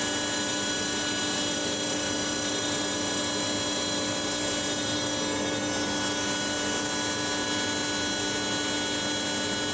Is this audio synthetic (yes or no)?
no